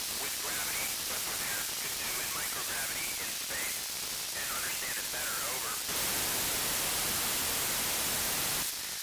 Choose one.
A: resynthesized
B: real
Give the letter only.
B